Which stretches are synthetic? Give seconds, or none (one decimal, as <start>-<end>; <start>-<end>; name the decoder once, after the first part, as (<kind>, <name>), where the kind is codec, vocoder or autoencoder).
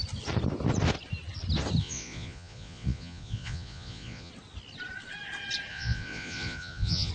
1.8-4.3 (vocoder, Vocos); 5.7-7.1